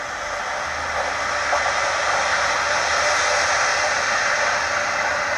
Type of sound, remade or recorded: recorded